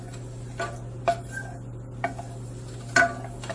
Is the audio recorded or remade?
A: recorded